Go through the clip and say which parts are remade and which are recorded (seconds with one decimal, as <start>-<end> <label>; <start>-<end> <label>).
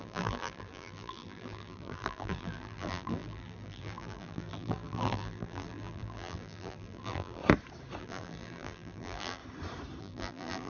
0.0-7.4 remade; 7.4-8.0 recorded; 8.0-9.4 remade; 9.4-10.0 recorded; 10.0-10.7 remade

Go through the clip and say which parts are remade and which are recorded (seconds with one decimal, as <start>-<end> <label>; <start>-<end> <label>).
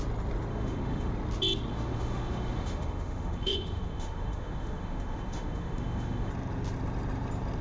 0.0-0.5 recorded; 0.5-1.1 remade; 1.1-1.7 recorded; 1.7-6.3 remade; 6.3-7.6 recorded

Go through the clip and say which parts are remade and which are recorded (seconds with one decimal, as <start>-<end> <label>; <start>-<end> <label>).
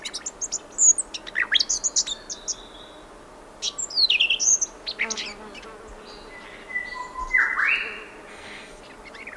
0.0-8.3 recorded; 8.3-8.8 remade; 8.8-9.4 recorded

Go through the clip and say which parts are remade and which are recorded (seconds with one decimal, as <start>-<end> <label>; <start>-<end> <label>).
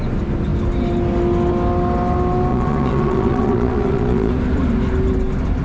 0.0-2.5 recorded; 2.5-4.3 remade; 4.3-5.6 recorded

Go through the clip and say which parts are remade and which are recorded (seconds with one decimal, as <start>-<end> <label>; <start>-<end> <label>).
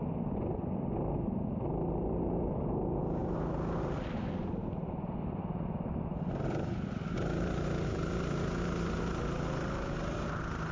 0.0-10.7 recorded